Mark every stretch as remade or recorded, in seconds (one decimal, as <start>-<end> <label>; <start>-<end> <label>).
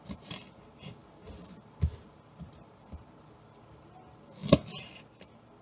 0.0-4.4 remade; 4.4-5.1 recorded; 5.1-5.6 remade